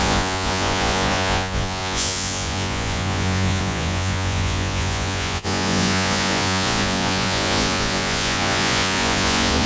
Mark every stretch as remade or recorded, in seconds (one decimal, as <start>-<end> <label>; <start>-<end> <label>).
0.0-9.7 remade